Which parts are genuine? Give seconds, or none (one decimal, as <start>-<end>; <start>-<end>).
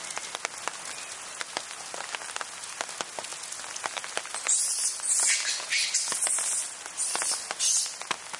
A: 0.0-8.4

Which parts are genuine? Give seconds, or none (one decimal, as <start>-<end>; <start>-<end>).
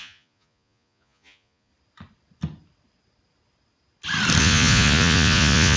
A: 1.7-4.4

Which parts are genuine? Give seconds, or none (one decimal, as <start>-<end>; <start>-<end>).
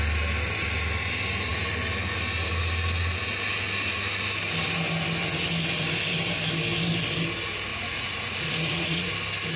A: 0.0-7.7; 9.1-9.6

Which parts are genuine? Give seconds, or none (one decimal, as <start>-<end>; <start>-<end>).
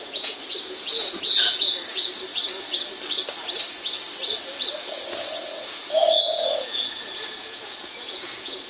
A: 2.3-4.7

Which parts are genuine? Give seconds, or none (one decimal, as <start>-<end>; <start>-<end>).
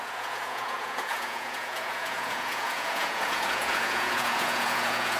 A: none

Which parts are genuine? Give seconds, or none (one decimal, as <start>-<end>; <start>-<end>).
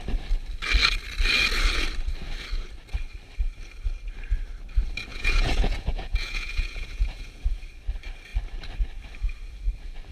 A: 0.0-5.1; 7.6-10.1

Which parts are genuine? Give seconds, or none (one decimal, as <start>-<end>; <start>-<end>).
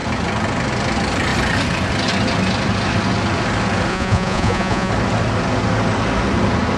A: 0.0-3.9; 4.9-6.8